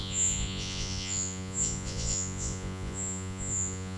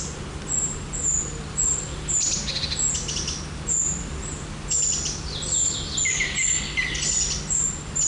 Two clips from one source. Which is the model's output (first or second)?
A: first